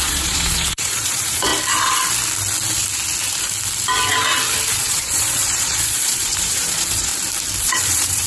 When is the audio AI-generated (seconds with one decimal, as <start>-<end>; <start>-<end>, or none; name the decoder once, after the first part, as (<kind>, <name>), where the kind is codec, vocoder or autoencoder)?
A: 0.0-1.5 (vocoder, Vocos); 4.7-7.1; 7.6-8.3